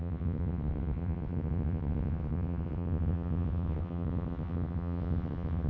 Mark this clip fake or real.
fake